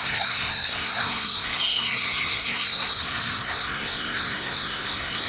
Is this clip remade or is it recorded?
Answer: remade